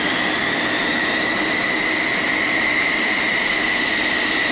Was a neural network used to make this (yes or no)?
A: no